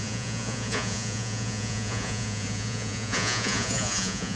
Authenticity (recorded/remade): remade